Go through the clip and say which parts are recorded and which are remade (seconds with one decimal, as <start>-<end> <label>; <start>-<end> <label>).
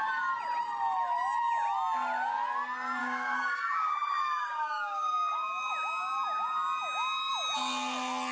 0.0-3.0 recorded; 3.0-5.7 remade; 5.7-8.3 recorded